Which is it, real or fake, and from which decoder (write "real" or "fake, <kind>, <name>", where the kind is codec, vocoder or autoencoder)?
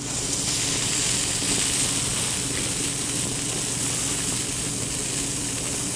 real